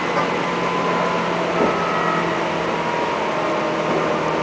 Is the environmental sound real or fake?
real